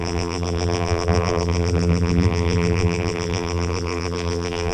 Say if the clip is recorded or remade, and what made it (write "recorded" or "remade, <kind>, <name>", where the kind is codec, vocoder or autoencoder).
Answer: remade, vocoder, BigVGAN v2